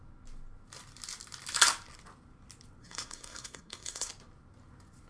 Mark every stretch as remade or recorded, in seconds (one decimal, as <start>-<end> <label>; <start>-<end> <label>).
0.0-2.8 recorded; 2.8-4.1 remade; 4.1-5.1 recorded